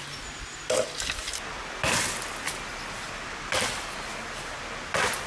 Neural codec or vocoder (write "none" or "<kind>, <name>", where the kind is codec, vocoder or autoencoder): none